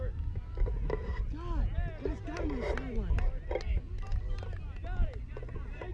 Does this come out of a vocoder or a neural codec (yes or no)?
no